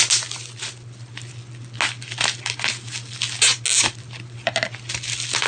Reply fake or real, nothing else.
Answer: real